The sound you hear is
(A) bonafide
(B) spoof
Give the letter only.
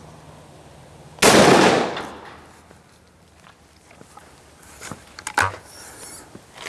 A